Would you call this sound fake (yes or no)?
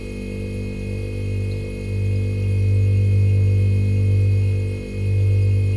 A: no